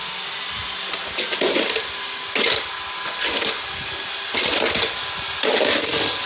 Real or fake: real